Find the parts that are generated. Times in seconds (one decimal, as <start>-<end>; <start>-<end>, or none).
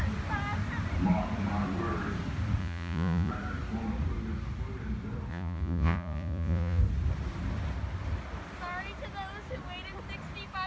2.6-3.3; 5.3-6.8